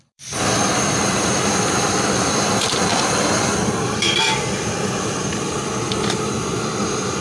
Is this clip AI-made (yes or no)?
yes